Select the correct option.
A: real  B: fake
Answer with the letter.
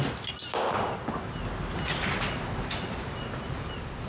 A